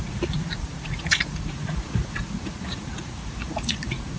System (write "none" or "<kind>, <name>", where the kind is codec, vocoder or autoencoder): vocoder, Vocos